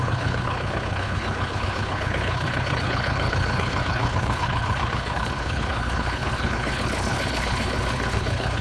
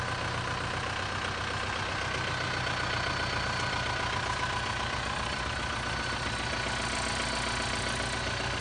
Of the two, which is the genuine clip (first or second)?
second